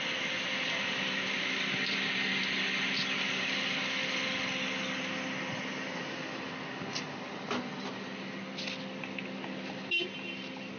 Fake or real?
real